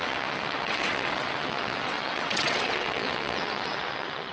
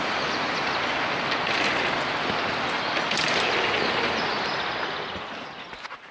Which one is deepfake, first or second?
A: first